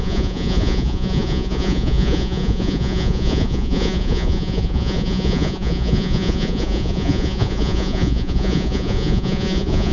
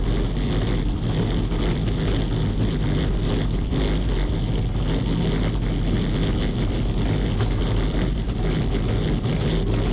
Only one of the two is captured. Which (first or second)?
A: second